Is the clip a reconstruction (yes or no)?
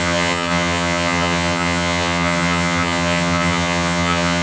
yes